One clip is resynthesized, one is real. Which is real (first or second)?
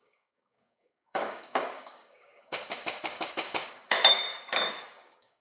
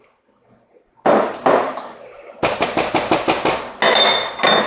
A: second